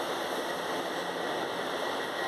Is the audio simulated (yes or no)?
no